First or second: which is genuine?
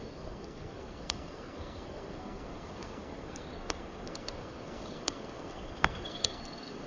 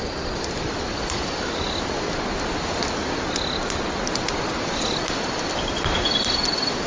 second